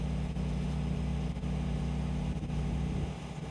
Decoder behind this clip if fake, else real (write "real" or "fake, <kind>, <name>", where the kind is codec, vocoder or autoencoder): real